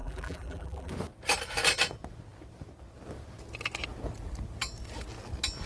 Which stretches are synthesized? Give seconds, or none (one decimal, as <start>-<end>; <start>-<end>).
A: 0.0-0.9